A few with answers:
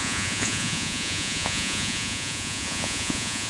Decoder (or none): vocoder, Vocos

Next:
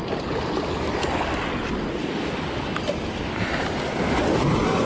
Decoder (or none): none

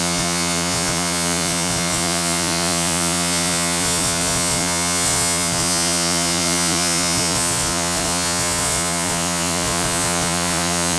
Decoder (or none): vocoder, Vocos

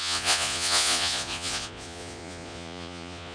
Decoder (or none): vocoder, Vocos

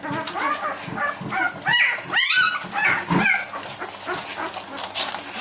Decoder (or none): none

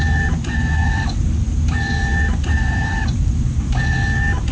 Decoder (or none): none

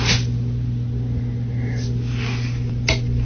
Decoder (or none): none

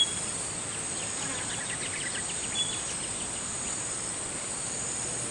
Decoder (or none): none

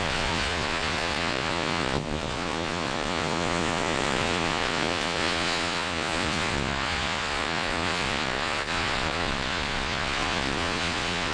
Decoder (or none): vocoder, Vocos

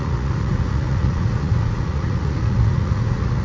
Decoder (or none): vocoder, Vocos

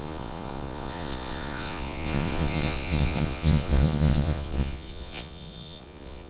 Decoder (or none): vocoder, Vocos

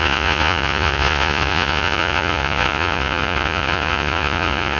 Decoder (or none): vocoder, Vocos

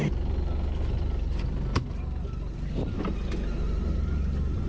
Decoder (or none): none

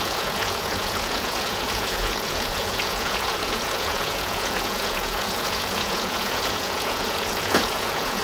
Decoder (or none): vocoder, Vocos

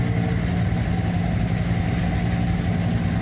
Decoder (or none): none